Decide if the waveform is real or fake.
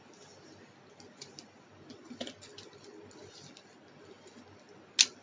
real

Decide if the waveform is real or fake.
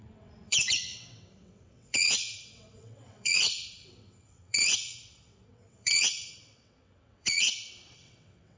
fake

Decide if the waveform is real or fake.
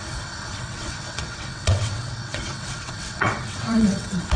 fake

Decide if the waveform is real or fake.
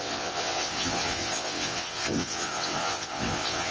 fake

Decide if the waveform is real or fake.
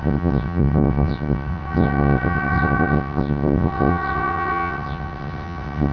fake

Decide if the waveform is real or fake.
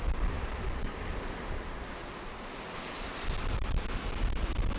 real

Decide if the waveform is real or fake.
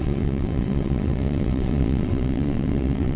fake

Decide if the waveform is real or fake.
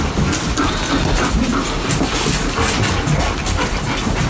real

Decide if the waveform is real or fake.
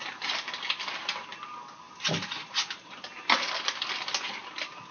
real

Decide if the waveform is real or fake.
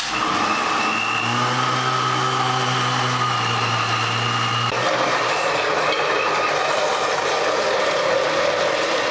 real